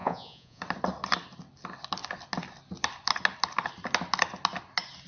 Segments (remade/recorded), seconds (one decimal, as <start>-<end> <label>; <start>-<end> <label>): 0.0-0.6 remade; 0.6-5.1 recorded